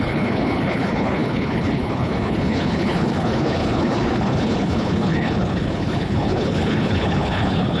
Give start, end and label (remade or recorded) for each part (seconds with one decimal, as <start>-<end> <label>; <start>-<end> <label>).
0.0-7.8 remade